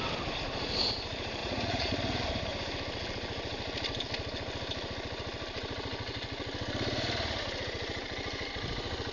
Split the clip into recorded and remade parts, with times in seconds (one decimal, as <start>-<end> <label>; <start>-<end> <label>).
0.0-1.4 recorded; 1.4-1.9 remade; 1.9-9.1 recorded